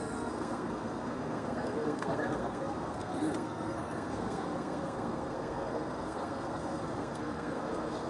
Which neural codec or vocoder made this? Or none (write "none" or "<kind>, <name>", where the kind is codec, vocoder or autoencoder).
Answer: codec, SNAC